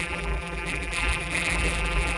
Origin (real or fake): fake